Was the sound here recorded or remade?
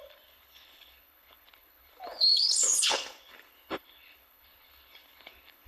remade